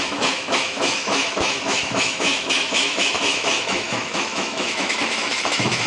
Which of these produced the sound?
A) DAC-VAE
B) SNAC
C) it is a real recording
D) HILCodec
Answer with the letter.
A